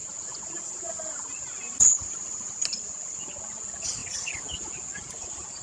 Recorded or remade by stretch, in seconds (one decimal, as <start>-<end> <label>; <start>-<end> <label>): 0.0-5.6 recorded